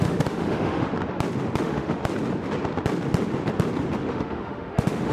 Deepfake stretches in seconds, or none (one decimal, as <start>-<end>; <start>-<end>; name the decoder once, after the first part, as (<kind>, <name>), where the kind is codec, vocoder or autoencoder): 0.0-0.9 (autoencoder, DAC-VAE); 1.6-2.0; 4.1-5.1